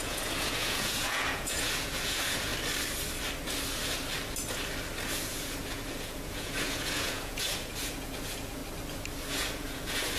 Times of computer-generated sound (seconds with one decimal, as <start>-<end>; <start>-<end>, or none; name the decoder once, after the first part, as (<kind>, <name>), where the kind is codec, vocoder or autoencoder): 0.0-2.5 (vocoder, Vocos); 5.1-8.6; 9.3-10.2